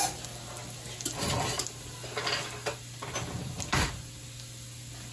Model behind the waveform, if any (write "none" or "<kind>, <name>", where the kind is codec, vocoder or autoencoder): none